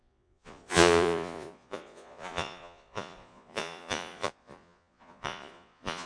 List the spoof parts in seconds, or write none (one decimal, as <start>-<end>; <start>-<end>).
0.0-6.1